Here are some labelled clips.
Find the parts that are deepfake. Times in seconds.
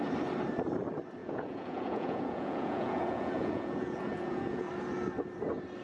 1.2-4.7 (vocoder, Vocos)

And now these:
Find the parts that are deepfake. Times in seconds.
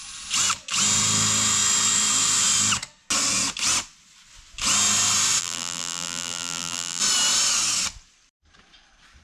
5.4-7.0 (vocoder, BigVGAN v2)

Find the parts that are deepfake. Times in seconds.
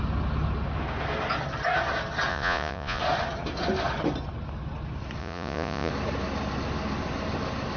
2.3-3.0 (vocoder, Vocos); 5.2-5.9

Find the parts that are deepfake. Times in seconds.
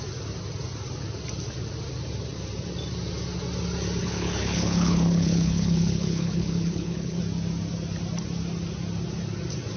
4.0-7.2 (codec, HILCodec)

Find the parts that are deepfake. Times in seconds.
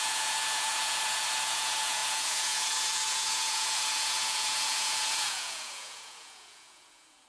0.0-7.3 (vocoder, Vocos)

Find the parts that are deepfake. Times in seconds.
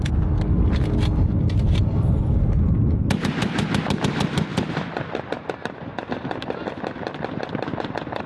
none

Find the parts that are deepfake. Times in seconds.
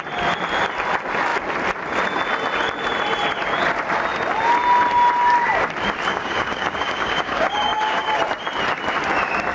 6.1-8.2 (codec, DAC)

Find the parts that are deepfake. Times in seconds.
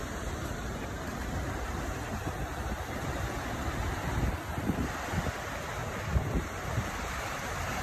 0.0-3.1 (vocoder, BigVGAN v2); 5.8-7.8